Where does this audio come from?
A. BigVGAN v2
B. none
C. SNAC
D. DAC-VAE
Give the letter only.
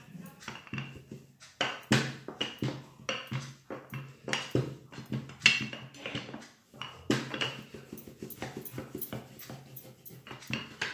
B